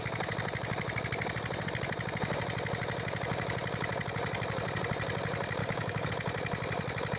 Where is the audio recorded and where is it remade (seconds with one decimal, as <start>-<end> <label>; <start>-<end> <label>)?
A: 0.0-5.6 recorded; 5.6-6.1 remade; 6.1-7.2 recorded